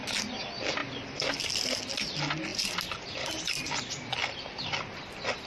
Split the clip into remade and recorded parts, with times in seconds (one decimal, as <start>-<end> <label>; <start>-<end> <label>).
0.0-0.8 recorded; 0.8-1.4 remade; 1.4-2.5 recorded; 2.5-3.7 remade; 3.7-5.5 recorded